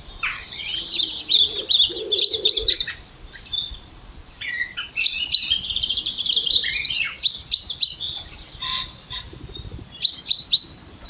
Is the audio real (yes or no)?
no